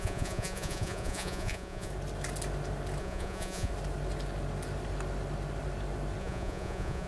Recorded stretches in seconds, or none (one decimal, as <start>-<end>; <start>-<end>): 1.9-3.0; 3.7-6.2